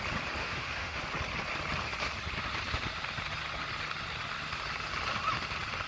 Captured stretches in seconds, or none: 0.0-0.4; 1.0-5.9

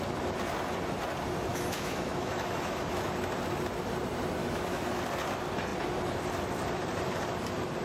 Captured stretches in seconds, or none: 0.0-1.5; 3.1-4.4; 5.0-7.8

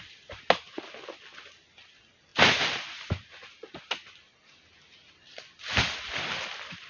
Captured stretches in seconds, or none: 0.0-6.9